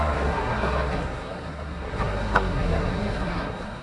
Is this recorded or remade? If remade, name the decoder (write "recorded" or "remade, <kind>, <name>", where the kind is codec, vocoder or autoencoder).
remade, codec, SNAC